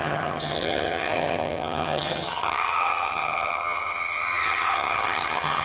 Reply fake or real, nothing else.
fake